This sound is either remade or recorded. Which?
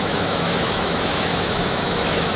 remade